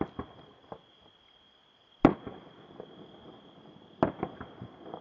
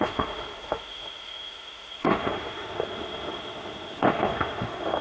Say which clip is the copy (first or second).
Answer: second